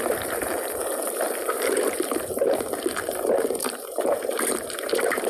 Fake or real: fake